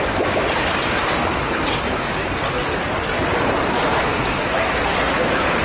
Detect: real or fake real